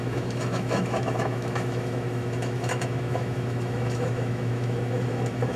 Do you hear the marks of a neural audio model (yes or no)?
yes